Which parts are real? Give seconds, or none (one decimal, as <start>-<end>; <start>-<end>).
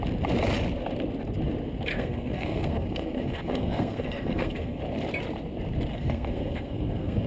0.0-1.9; 4.8-5.9